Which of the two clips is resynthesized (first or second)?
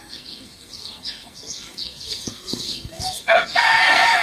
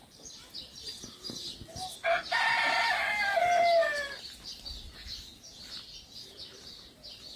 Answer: first